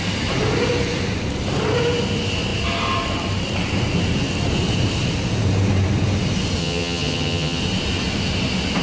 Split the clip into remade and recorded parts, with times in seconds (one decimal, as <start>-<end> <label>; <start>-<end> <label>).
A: 0.0-6.6 recorded; 6.6-7.6 remade; 7.6-8.8 recorded